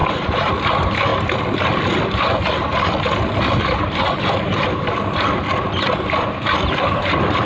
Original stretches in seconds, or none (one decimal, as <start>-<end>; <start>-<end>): 0.5-7.5